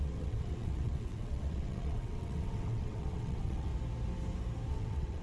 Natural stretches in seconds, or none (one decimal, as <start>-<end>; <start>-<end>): 3.7-4.7